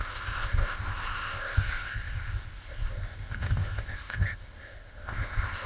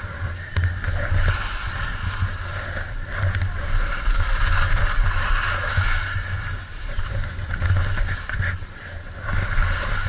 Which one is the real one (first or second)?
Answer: second